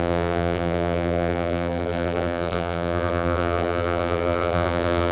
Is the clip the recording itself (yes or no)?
no